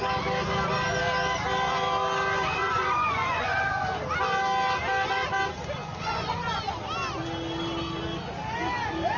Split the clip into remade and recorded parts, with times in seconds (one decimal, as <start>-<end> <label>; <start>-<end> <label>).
0.0-2.6 recorded; 2.6-3.7 remade; 3.7-5.8 recorded; 5.8-6.7 remade; 6.7-9.2 recorded